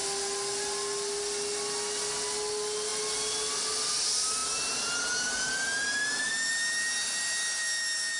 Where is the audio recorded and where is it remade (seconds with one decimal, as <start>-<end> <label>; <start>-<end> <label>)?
0.0-8.2 recorded